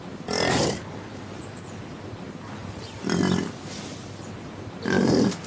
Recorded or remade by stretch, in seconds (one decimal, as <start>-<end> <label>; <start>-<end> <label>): 0.0-5.5 recorded